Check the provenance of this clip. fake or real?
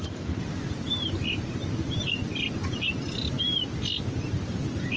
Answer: real